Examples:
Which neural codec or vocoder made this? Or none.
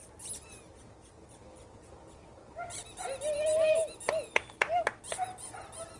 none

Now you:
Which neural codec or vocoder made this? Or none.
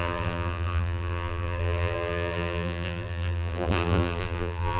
vocoder, BigVGAN v2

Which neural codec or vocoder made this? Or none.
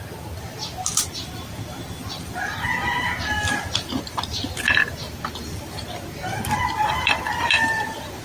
vocoder, BigVGAN v2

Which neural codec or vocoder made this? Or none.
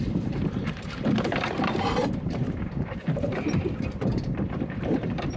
vocoder, BigVGAN v2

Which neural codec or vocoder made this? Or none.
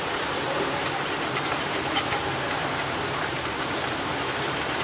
vocoder, BigVGAN v2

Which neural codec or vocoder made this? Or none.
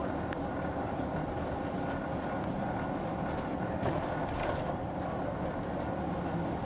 vocoder, BigVGAN v2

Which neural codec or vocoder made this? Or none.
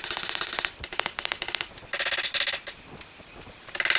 none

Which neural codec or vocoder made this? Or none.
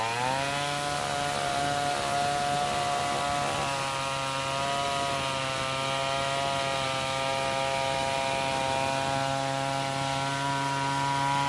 none